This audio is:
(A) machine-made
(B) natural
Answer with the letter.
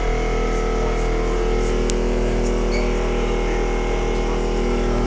B